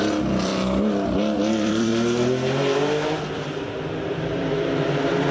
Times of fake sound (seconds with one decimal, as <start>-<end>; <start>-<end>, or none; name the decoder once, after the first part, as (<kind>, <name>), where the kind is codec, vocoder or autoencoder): 0.0-0.5 (vocoder, BigVGAN v2); 1.4-1.9; 4.1-5.3